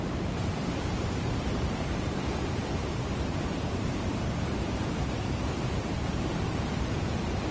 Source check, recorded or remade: remade